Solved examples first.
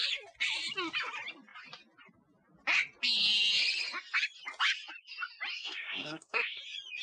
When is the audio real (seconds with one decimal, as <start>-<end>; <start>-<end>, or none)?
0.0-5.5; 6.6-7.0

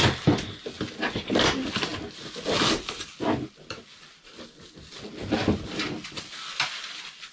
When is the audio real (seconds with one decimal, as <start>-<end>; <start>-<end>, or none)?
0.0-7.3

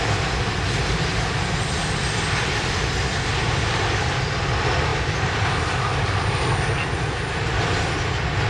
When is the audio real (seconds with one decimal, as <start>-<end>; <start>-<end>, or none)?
0.0-8.5